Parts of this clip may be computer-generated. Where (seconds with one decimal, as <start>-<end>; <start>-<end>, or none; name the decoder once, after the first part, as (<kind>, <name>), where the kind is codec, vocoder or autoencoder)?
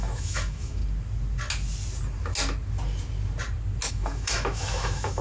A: 0.0-0.8 (autoencoder, DAC-VAE); 3.9-5.2